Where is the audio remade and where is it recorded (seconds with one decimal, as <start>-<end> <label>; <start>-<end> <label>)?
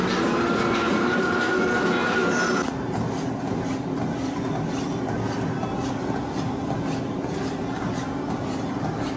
0.0-9.2 recorded